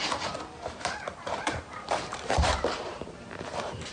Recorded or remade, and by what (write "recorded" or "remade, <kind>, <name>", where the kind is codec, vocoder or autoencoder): remade, vocoder, BigVGAN v2